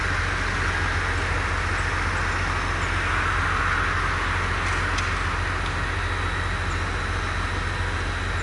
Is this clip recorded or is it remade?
recorded